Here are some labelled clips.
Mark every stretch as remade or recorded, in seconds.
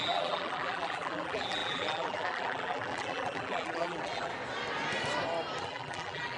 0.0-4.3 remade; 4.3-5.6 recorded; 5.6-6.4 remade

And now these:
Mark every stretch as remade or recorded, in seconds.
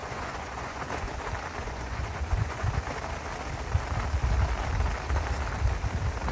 0.0-1.2 remade; 1.2-1.6 recorded; 1.6-2.7 remade; 2.7-6.3 recorded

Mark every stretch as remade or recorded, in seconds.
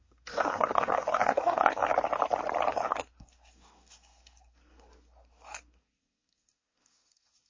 0.0-1.9 remade; 1.9-2.7 recorded; 2.7-7.5 remade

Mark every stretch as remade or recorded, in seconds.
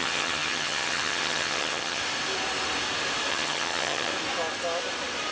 0.0-2.0 remade; 2.0-3.3 recorded; 3.3-4.1 remade; 4.1-5.3 recorded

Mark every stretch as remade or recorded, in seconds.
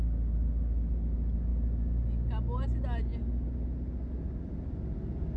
0.0-5.4 recorded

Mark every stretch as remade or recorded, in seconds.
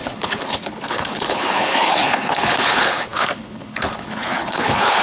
0.0-5.0 remade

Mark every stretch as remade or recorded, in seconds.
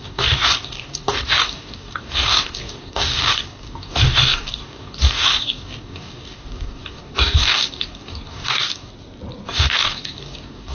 0.0-8.9 remade; 8.9-9.5 recorded; 9.5-10.7 remade